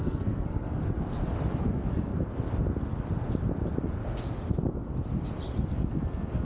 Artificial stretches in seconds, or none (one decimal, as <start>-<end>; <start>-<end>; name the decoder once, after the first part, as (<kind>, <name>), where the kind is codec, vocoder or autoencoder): 0.0-0.8 (codec, SNAC); 1.6-2.1; 5.9-6.4